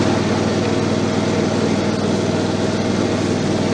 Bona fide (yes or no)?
yes